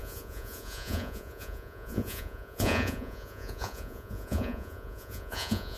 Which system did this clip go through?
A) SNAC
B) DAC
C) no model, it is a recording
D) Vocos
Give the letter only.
D